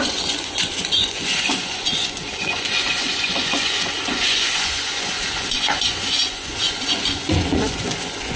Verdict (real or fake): fake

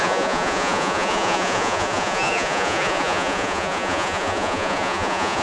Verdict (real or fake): fake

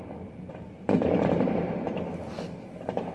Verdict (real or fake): real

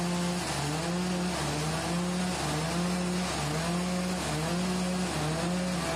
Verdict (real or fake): real